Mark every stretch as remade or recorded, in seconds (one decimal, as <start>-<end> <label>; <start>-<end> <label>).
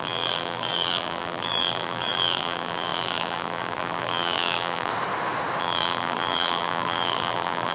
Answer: 0.0-4.9 remade; 4.9-5.6 recorded; 5.6-7.7 remade